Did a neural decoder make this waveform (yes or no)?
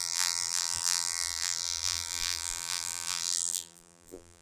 yes